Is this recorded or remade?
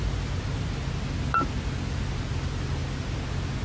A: recorded